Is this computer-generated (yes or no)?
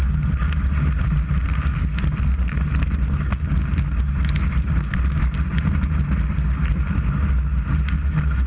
no